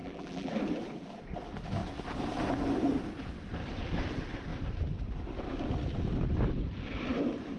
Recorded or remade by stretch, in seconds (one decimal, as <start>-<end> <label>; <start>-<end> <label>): 0.0-0.5 remade; 0.5-7.6 recorded